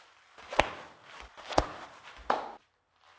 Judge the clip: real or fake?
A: real